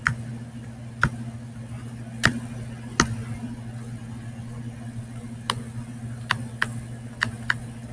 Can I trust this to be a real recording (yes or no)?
yes